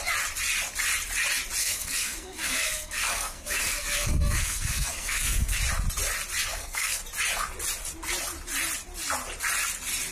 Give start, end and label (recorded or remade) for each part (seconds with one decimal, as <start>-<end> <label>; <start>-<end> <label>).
0.0-1.6 recorded; 1.6-5.6 remade; 5.6-6.5 recorded; 6.5-7.0 remade; 7.0-10.1 recorded